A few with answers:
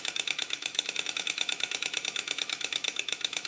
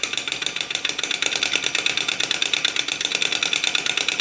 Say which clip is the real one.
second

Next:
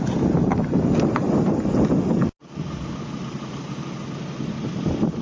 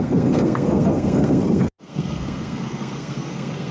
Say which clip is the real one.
first